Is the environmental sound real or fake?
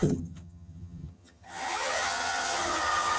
fake